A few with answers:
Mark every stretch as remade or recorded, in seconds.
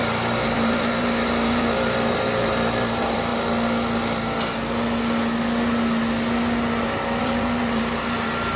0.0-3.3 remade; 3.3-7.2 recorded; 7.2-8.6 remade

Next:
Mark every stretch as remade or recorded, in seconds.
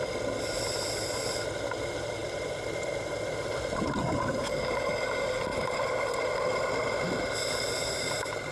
0.0-5.5 recorded; 5.5-6.3 remade; 6.3-8.5 recorded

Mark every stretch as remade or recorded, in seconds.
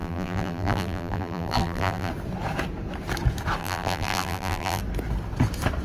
0.0-2.1 remade; 2.1-3.6 recorded; 3.6-4.8 remade; 4.8-5.8 recorded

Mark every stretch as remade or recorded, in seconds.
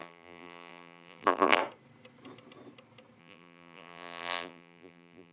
0.0-1.6 remade; 1.6-3.2 recorded; 3.2-5.3 remade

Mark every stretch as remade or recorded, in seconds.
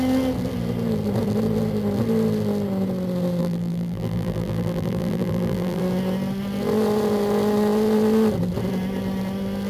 0.0-3.4 recorded; 3.4-5.8 remade; 5.8-9.7 recorded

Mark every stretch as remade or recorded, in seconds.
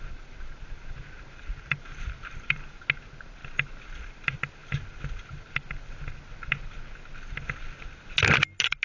0.0-1.5 recorded; 1.5-2.5 remade; 2.5-8.8 recorded